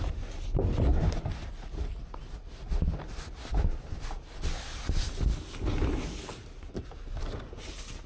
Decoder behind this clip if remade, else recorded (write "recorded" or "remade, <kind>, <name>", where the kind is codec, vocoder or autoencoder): recorded